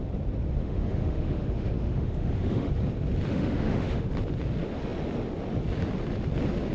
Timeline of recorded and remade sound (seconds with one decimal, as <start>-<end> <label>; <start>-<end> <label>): 0.0-0.6 recorded; 0.6-2.7 remade; 2.7-3.3 recorded; 3.3-4.1 remade; 4.1-6.7 recorded